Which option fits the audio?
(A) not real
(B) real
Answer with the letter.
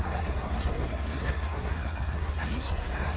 A